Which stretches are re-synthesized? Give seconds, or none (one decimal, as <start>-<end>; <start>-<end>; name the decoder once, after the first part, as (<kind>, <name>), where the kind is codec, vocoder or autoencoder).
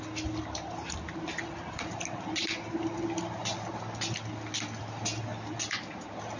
none